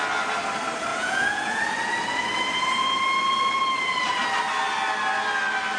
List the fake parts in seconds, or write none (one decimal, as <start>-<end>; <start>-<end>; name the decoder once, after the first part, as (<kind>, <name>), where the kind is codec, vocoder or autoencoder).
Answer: 0.9-1.6 (vocoder, Vocos)